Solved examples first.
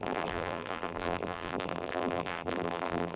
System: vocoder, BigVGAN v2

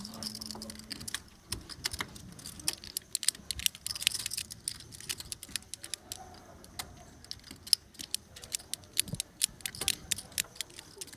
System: none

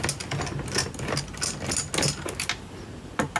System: none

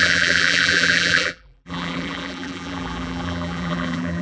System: vocoder, BigVGAN v2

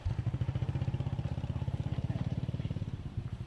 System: vocoder, BigVGAN v2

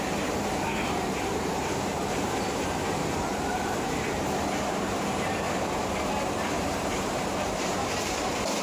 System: vocoder, BigVGAN v2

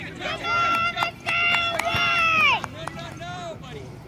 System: none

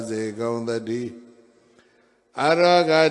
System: none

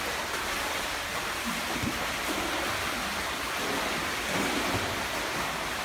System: none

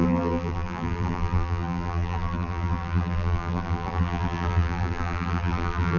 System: vocoder, BigVGAN v2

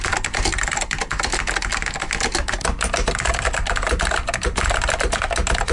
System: none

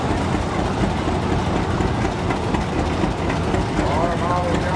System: none